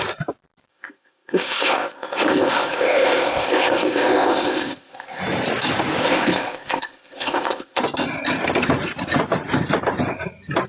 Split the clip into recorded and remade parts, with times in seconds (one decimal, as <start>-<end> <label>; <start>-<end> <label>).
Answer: 0.0-0.7 recorded; 0.7-5.2 remade; 5.2-6.0 recorded; 6.0-7.8 remade; 7.8-10.7 recorded